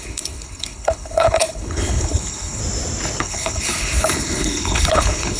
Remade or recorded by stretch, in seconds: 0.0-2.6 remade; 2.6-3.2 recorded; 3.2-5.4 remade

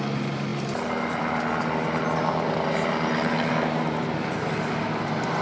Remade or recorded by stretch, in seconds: 0.0-5.4 recorded

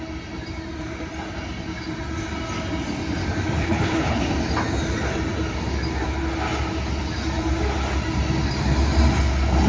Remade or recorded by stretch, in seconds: 0.0-3.6 recorded; 3.6-4.2 remade; 4.2-9.7 recorded

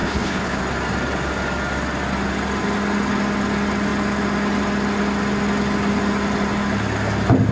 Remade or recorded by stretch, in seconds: 0.0-0.6 remade; 0.6-7.5 recorded

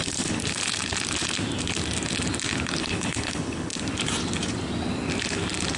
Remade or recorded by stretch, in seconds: 0.0-0.4 remade; 0.4-2.8 recorded; 2.8-3.7 remade; 3.7-5.8 recorded

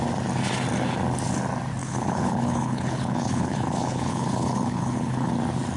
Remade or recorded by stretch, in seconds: 0.0-1.8 recorded; 1.8-5.3 remade; 5.3-5.8 recorded

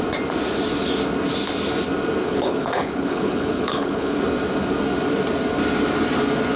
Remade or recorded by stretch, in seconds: 0.0-2.2 recorded; 2.2-4.2 remade; 4.2-6.6 recorded

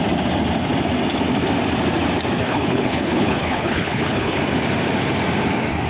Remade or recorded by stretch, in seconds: 0.0-2.4 recorded; 2.4-4.4 remade; 4.4-5.9 recorded